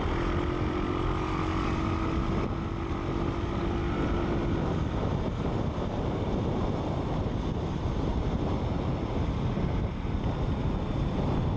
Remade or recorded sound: recorded